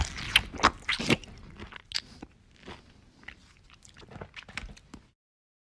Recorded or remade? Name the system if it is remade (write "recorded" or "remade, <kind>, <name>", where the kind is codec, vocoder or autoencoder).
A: recorded